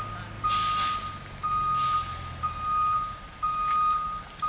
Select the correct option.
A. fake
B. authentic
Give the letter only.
B